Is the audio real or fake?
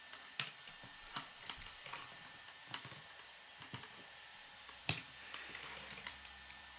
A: fake